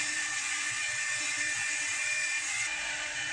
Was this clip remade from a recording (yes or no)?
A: yes